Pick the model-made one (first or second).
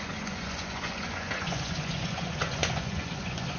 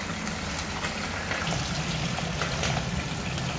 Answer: first